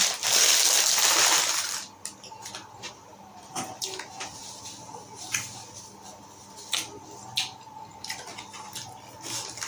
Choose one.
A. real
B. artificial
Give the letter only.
A